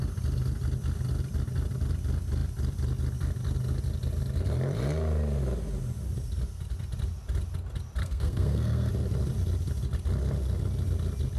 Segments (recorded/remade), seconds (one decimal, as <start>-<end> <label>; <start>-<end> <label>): 0.0-8.0 recorded; 8.0-8.9 remade; 8.9-11.4 recorded